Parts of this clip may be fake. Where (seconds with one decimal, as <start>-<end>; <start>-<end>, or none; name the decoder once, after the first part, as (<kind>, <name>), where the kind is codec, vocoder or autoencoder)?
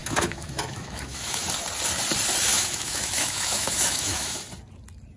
0.0-1.4 (autoencoder, DAC-VAE); 2.5-4.4